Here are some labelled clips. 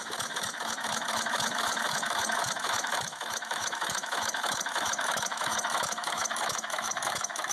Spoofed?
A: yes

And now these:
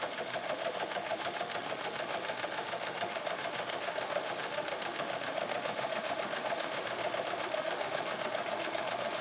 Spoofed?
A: yes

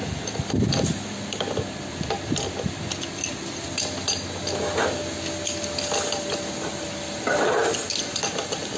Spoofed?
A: no